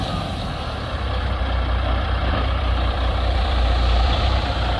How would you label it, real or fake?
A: fake